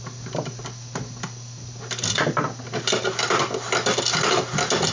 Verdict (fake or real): real